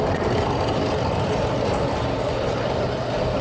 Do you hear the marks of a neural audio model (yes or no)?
no